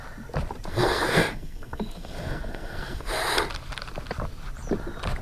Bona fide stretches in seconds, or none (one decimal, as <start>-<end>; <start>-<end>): 0.0-0.7; 3.1-5.2